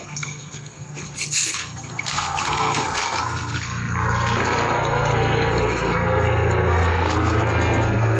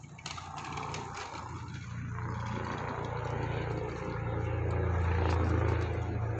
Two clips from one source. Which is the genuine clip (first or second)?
second